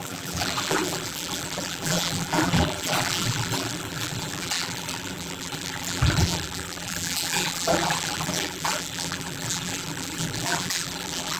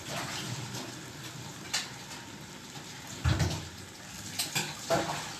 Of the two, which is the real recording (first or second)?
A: second